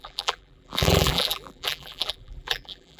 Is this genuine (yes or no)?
no